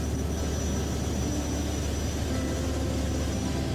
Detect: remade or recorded recorded